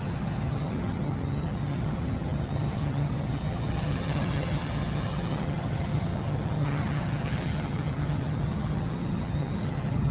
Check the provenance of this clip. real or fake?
fake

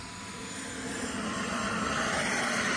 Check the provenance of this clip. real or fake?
real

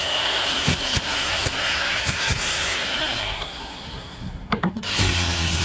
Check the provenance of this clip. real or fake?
fake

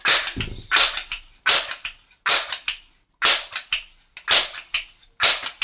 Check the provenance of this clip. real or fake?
real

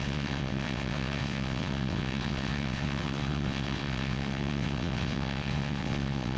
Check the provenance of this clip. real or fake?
fake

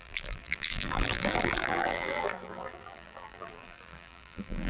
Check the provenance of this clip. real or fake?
fake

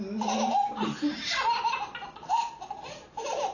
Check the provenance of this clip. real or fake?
real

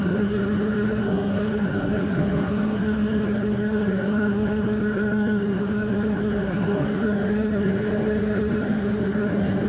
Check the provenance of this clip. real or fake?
fake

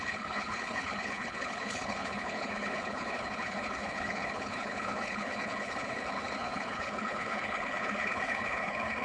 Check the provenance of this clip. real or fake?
fake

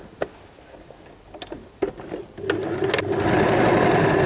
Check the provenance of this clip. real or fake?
real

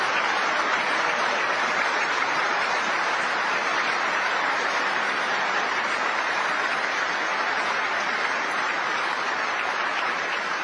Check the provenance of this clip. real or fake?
fake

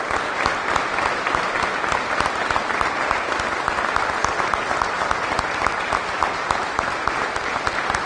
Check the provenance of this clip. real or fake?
real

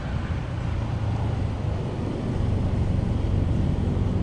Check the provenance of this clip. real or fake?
real